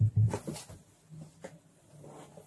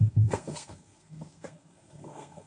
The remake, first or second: second